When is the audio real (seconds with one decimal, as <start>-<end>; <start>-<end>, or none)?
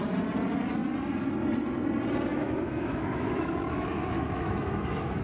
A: 0.0-2.3